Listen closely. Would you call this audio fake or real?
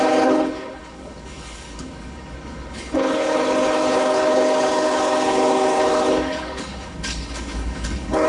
fake